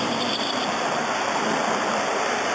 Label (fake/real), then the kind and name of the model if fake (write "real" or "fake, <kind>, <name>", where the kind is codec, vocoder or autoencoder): fake, vocoder, BigVGAN v2